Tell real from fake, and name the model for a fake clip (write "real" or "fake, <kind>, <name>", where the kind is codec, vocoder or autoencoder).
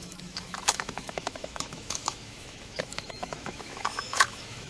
fake, autoencoder, DAC-VAE